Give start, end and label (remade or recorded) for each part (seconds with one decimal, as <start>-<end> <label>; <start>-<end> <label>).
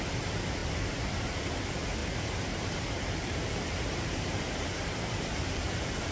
0.0-2.0 recorded; 2.0-6.1 remade